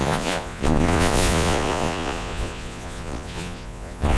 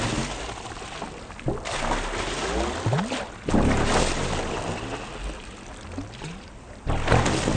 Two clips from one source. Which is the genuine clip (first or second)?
second